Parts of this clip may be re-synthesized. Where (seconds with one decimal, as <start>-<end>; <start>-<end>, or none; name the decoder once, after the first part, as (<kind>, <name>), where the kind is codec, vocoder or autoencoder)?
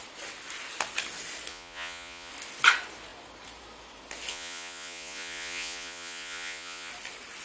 1.5-2.3 (vocoder, Vocos); 4.3-6.9